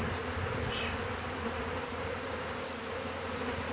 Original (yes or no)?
no